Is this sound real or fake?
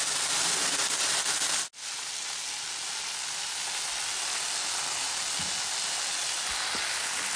real